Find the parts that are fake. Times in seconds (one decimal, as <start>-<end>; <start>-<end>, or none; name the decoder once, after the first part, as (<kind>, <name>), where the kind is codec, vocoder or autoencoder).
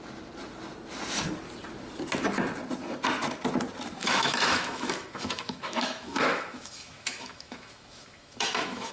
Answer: 4.0-8.9 (autoencoder, DAC-VAE)